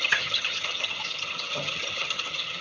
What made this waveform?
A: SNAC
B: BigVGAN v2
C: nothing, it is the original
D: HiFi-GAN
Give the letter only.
D